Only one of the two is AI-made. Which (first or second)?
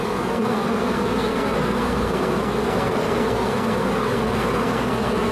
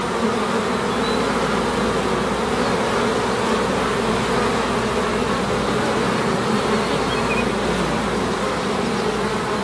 first